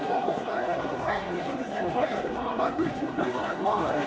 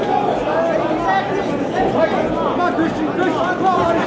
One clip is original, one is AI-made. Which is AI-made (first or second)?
first